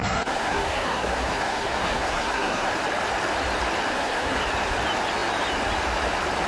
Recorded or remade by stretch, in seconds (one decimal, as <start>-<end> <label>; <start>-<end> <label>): 0.0-2.7 remade; 2.7-3.9 recorded; 3.9-4.4 remade; 4.4-6.5 recorded